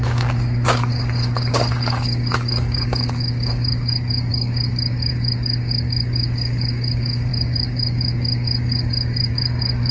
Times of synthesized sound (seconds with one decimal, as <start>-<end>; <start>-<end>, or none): 0.0-9.9

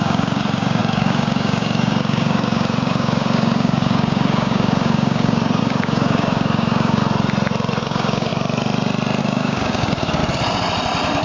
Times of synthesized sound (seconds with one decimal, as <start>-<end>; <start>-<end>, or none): 0.0-7.0; 7.8-8.3; 9.2-10.2